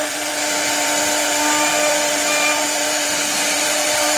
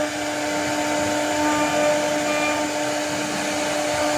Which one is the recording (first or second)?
second